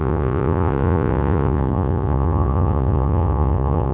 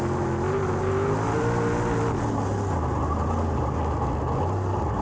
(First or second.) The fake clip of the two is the first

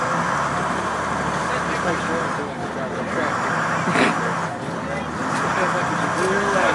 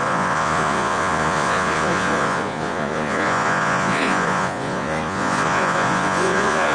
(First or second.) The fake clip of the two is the second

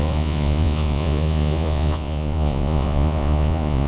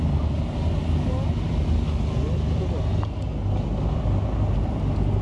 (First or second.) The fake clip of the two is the first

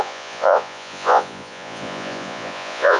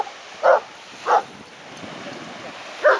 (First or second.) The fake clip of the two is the first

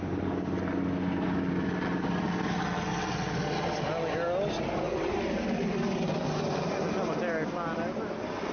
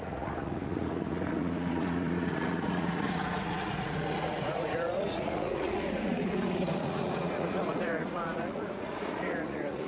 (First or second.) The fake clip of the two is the second